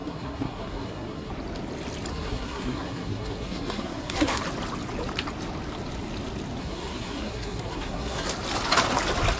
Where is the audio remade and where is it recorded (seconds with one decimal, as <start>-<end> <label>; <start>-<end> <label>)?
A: 0.0-1.3 remade; 1.3-2.1 recorded; 2.1-4.4 remade; 4.4-6.6 recorded; 6.6-8.3 remade; 8.3-9.4 recorded

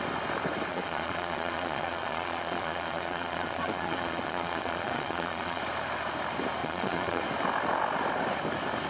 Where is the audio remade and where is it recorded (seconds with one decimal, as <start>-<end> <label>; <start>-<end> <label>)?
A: 0.0-0.7 recorded; 0.7-5.6 remade; 5.6-6.6 recorded; 6.6-7.2 remade; 7.2-8.9 recorded

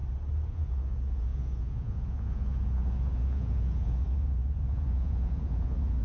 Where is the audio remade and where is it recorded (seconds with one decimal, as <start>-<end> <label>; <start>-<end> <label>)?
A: 0.0-0.5 recorded; 0.5-6.0 remade